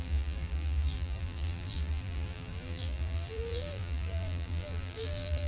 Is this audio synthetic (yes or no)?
yes